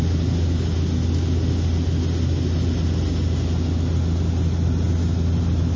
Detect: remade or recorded recorded